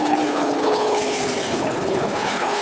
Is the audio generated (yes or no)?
yes